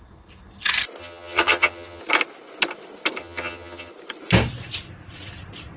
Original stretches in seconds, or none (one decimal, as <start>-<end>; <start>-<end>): 0.0-1.0; 2.0-3.2; 3.9-5.8

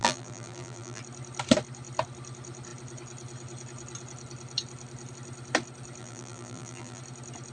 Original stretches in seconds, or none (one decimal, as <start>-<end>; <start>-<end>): 1.0-6.0; 7.0-7.5